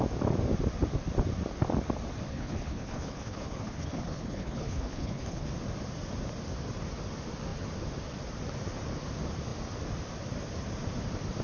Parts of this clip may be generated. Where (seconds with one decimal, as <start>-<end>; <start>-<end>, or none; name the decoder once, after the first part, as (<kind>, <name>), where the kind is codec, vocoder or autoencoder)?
2.3-5.5 (codec, HILCodec)